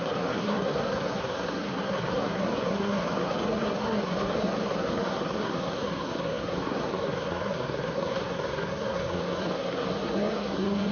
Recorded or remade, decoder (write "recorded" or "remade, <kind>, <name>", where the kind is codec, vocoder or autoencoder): remade, codec, SNAC